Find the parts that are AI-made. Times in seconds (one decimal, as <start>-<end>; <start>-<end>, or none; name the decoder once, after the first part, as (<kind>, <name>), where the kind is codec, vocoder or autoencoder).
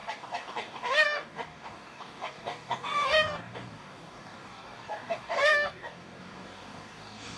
0.0-7.4 (codec, DAC)